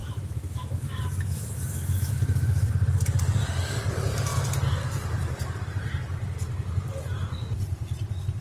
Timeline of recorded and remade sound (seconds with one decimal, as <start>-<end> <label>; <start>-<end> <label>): 0.0-2.7 remade; 2.7-8.4 recorded